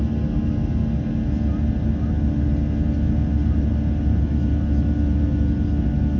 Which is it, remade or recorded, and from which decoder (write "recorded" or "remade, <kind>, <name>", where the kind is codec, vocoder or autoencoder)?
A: recorded